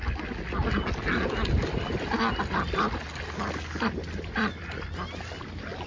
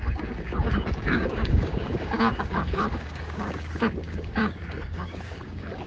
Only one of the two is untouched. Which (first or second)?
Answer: first